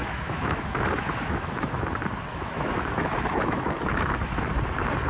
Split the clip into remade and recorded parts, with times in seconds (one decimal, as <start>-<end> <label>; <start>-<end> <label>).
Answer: 0.0-1.8 remade; 1.8-2.3 recorded; 2.3-4.5 remade; 4.5-5.1 recorded